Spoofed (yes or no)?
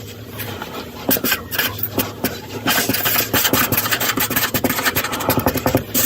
yes